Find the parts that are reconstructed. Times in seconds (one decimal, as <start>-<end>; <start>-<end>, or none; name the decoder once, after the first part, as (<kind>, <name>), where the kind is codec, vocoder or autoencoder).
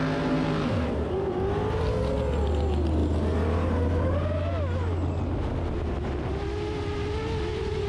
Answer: none